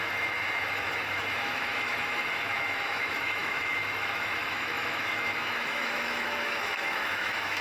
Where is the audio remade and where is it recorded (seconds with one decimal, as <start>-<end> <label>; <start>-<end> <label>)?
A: 0.0-7.6 remade